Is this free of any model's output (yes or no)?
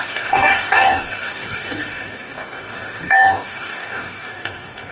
no